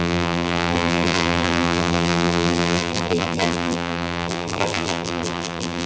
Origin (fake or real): fake